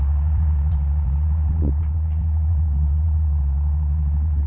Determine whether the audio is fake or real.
fake